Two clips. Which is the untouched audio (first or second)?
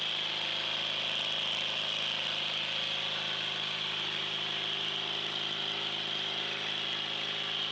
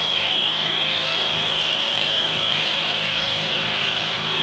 first